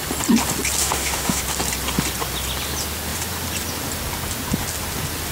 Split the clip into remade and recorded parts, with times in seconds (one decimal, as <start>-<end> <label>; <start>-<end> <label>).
0.0-0.8 recorded; 0.8-1.4 remade; 1.4-5.3 recorded